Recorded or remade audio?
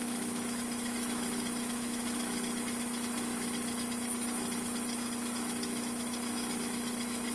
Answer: remade